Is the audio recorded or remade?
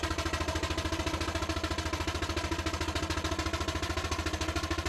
recorded